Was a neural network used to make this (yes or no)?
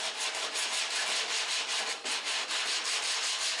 no